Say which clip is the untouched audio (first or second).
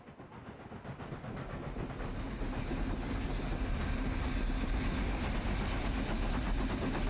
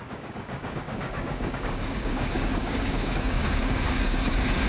first